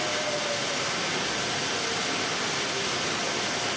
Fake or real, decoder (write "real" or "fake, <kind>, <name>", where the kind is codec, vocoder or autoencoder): real